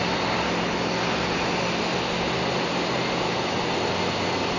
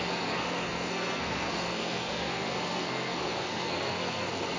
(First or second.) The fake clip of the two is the second